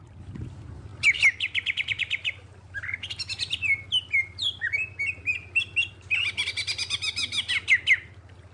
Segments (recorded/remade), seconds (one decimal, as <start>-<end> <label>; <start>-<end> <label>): 0.0-8.5 recorded